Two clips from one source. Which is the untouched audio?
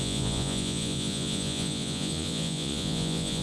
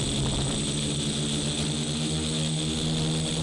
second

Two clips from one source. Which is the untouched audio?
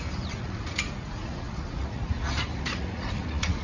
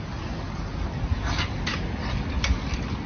second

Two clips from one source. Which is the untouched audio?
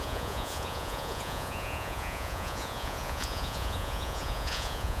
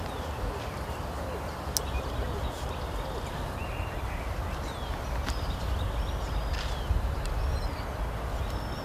second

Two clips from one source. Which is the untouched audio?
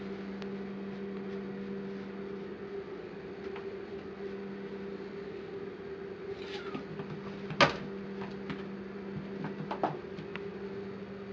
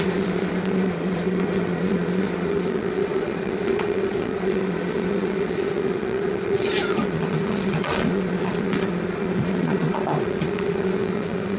first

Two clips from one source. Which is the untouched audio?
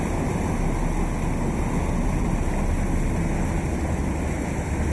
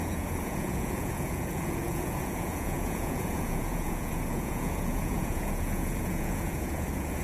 first